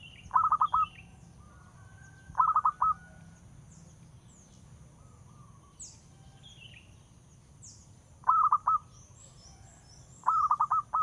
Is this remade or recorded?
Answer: recorded